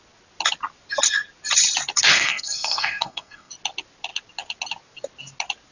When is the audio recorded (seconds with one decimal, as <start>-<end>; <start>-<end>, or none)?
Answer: 0.0-2.1; 3.5-5.7